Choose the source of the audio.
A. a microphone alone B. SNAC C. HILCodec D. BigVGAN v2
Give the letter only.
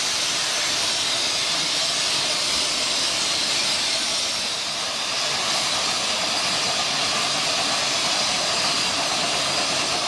A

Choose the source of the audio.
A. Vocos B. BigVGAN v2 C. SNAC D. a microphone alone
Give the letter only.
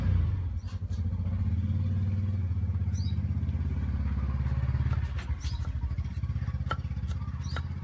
D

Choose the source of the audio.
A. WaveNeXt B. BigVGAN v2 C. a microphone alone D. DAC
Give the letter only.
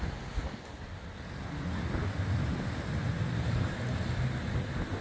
C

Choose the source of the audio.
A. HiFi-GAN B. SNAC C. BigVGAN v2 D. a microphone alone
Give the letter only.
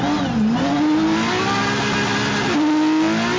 D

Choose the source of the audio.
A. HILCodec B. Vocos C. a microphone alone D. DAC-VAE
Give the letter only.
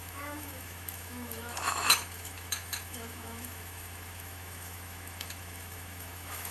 D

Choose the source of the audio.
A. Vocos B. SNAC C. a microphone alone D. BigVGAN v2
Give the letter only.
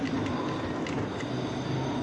C